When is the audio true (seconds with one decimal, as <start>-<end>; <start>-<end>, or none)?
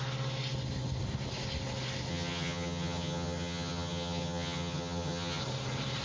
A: 0.0-2.1; 5.4-6.0